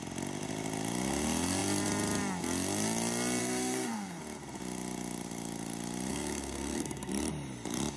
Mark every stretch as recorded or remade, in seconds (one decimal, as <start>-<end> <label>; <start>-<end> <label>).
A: 0.0-3.4 recorded; 3.4-4.2 remade; 4.2-6.1 recorded; 6.1-7.1 remade; 7.1-8.0 recorded